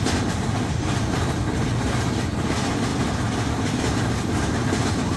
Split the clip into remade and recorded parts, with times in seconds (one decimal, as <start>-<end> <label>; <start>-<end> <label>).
0.0-5.2 recorded